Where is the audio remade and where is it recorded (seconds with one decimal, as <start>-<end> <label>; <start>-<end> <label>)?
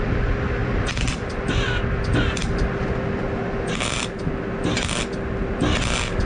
0.0-0.6 recorded; 0.6-1.6 remade; 1.6-6.3 recorded